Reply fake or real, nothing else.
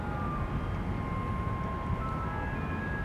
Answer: real